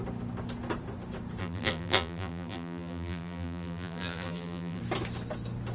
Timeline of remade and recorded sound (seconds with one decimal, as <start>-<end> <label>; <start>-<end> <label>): 0.0-1.4 recorded; 1.4-4.8 remade; 4.8-5.7 recorded